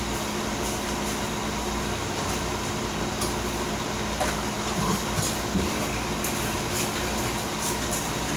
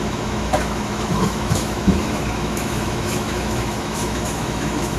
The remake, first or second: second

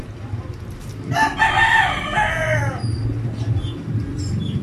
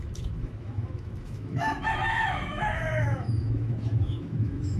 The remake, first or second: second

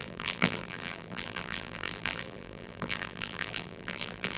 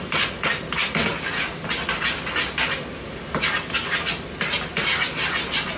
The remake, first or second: first